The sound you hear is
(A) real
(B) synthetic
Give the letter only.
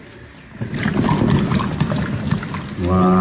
A